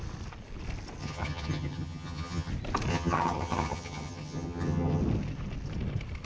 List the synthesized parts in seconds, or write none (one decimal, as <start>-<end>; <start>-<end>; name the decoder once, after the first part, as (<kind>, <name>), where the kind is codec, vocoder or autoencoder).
1.0-2.5 (vocoder, HiFi-GAN); 2.9-5.0